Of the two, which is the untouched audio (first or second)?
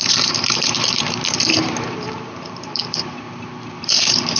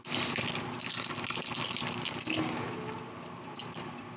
second